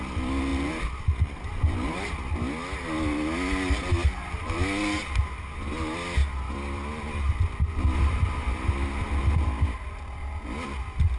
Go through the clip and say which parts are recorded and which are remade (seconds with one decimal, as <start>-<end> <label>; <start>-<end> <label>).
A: 0.0-11.2 recorded